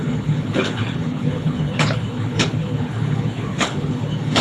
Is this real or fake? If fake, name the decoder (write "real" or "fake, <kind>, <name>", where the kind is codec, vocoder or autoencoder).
fake, codec, HILCodec